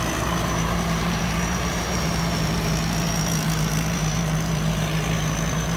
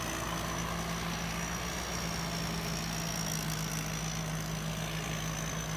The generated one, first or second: first